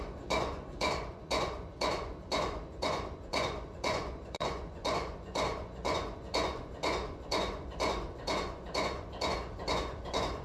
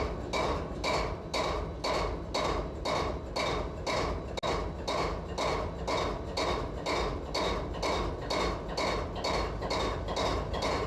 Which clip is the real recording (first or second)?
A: second